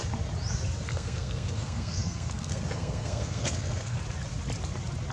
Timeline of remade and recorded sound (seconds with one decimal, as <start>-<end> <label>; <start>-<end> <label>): 0.0-0.9 recorded; 0.9-4.0 remade; 4.0-5.1 recorded

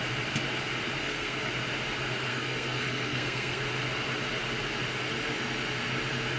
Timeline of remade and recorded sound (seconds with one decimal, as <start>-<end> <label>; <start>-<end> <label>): 0.0-1.0 recorded; 1.0-1.5 remade; 1.5-2.3 recorded; 2.3-3.6 remade; 3.6-6.4 recorded

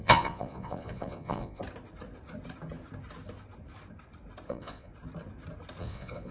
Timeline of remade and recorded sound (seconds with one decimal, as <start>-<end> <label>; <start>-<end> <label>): 0.0-1.6 remade; 1.6-4.5 recorded; 4.5-4.9 remade; 4.9-5.8 recorded; 5.8-6.3 remade

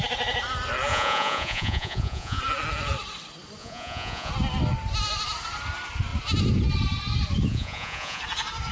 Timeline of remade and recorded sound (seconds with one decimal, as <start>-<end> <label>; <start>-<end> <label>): 0.0-0.9 recorded; 0.9-2.4 remade; 2.4-3.6 recorded; 3.6-4.3 remade; 4.3-7.5 recorded; 7.5-8.2 remade; 8.2-8.7 recorded

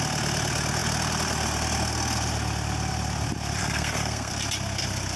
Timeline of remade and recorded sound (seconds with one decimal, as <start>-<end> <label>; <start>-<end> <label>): 0.0-3.6 recorded; 3.6-4.3 remade; 4.3-5.2 recorded

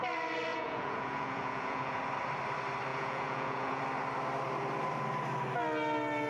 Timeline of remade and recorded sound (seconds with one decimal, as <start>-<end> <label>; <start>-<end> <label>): 0.0-0.5 recorded; 0.5-2.0 remade; 2.0-2.9 recorded; 2.9-3.8 remade; 3.8-6.3 recorded

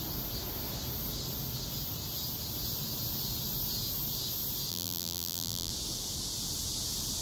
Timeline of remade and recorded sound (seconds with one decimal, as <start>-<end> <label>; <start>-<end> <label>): 0.0-4.7 recorded; 4.7-5.7 remade; 5.7-7.2 recorded